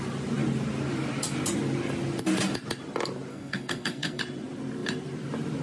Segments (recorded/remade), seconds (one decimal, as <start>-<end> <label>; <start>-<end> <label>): 0.0-3.3 recorded; 3.3-4.2 remade; 4.2-5.6 recorded